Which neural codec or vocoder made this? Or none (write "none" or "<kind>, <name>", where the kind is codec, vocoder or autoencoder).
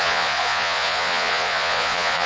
vocoder, Vocos